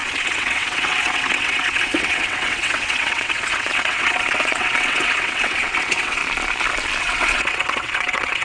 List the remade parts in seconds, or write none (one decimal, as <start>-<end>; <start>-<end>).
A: 0.0-6.2; 7.0-8.4